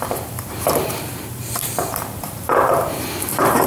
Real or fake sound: fake